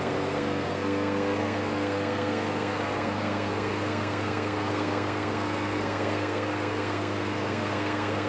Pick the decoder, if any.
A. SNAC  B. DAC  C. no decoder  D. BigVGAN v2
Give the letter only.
A